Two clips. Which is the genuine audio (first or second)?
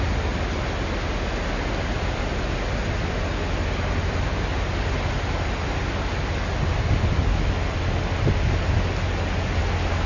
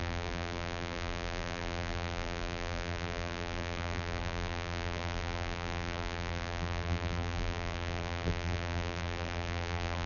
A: first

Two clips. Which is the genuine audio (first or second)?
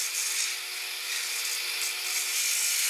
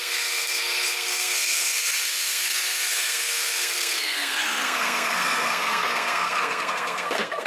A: first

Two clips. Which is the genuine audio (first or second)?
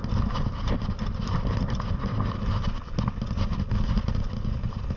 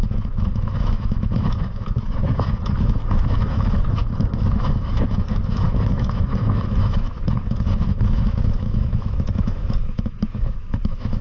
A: first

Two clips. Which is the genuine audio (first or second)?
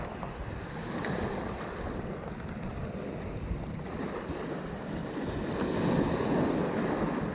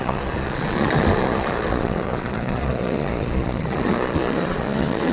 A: first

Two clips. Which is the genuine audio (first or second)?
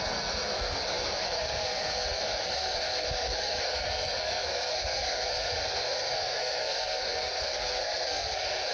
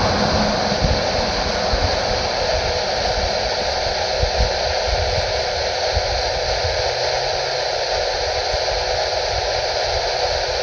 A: second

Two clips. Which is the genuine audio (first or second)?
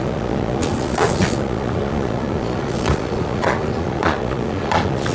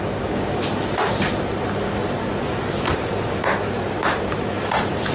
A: second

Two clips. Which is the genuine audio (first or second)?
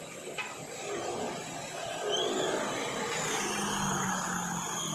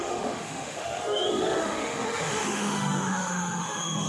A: first